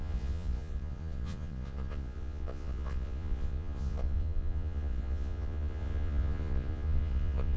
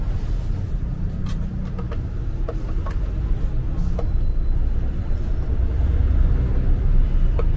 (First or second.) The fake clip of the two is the first